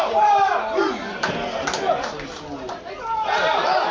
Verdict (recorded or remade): remade